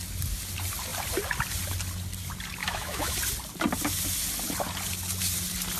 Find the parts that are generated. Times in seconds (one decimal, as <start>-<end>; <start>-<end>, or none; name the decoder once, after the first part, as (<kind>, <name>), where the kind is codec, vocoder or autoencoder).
2.6-3.2 (autoencoder, DAC-VAE)